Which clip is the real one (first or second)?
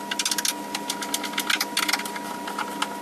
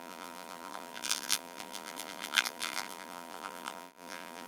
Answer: first